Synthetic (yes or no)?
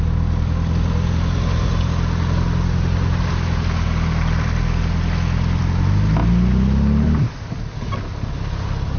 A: no